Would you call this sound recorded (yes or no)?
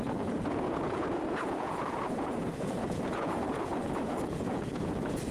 no